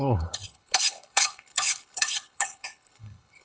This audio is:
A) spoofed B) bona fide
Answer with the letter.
A